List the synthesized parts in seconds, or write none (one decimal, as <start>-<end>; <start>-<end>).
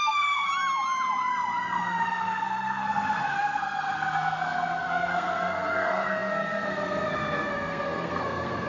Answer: 0.0-0.5; 1.8-8.7